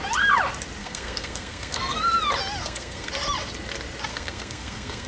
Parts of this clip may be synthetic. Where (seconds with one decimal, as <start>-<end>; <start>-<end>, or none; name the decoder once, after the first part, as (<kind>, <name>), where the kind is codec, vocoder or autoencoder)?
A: 0.8-2.0 (codec, SNAC); 2.6-3.1; 4.1-5.1